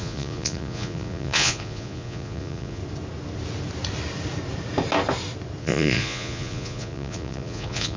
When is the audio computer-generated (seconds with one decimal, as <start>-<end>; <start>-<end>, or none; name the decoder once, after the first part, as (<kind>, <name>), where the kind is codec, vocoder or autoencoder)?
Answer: 0.0-2.8 (vocoder, Vocos); 5.6-8.0

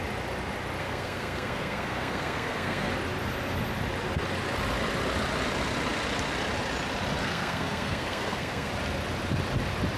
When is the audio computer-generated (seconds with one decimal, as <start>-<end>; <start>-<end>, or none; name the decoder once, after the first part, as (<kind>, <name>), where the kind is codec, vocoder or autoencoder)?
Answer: 0.8-2.9 (codec, SNAC); 7.2-8.7